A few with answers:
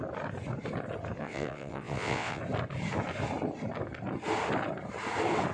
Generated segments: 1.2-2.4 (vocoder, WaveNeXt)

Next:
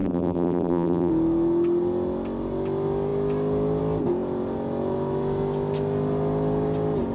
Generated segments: 0.0-1.1 (vocoder, BigVGAN v2)

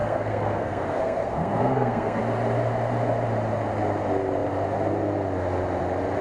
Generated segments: 0.0-2.2 (codec, SNAC)

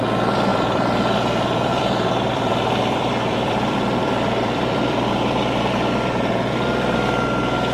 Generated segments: 0.5-5.1 (vocoder, BigVGAN v2)